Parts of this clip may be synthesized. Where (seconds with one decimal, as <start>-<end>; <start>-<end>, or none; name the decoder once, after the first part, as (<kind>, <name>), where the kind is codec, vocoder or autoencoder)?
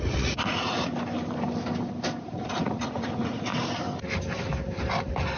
0.0-0.9 (vocoder, Vocos); 2.2-3.5